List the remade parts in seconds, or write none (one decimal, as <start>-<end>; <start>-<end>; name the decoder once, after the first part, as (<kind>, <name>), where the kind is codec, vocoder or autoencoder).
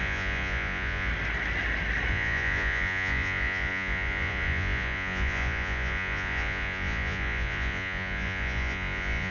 0.0-1.1 (vocoder, Vocos); 2.1-9.3